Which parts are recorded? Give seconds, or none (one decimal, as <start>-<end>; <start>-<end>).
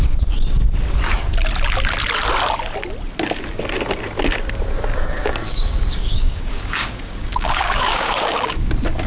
0.0-4.9; 8.7-9.1